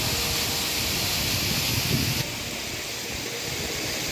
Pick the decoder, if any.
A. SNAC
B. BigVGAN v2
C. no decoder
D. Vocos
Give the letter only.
C